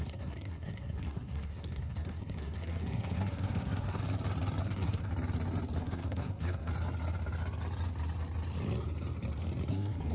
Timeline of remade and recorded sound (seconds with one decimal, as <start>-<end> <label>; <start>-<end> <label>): 0.0-4.0 remade; 4.0-4.6 recorded; 4.6-5.1 remade; 5.1-5.8 recorded; 5.8-6.7 remade; 6.7-9.7 recorded; 9.7-10.1 remade